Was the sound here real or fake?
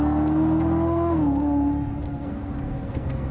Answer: fake